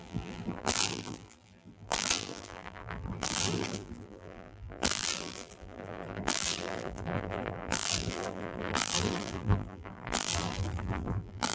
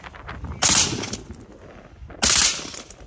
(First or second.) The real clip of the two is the second